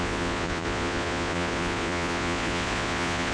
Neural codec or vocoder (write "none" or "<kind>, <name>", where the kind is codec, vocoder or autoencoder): vocoder, Vocos